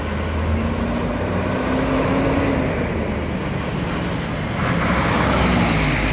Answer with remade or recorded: recorded